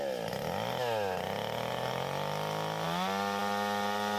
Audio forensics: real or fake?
real